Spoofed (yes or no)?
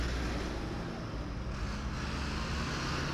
no